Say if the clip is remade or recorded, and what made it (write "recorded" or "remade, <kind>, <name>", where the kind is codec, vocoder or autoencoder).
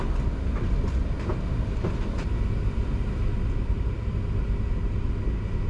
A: recorded